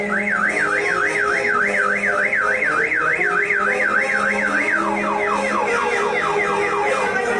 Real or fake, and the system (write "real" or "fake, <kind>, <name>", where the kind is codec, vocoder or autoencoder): real